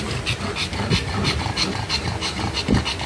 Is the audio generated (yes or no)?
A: no